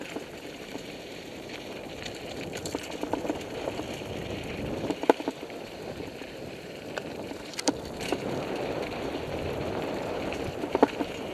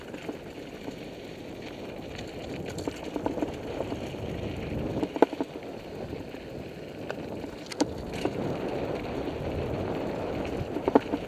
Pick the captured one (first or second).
second